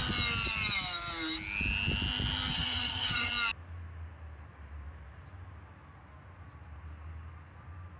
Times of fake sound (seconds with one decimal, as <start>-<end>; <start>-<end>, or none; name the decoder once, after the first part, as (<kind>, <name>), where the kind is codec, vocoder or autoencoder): 2.5-3.3 (vocoder, HiFi-GAN)